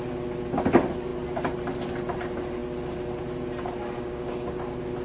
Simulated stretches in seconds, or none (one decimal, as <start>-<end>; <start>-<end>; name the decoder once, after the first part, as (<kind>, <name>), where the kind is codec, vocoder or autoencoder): 3.8-4.5 (codec, DAC)